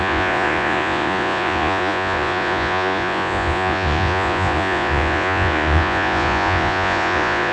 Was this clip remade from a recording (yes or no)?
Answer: yes